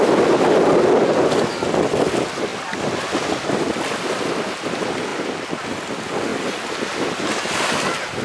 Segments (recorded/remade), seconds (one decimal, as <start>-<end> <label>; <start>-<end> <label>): 0.0-8.2 recorded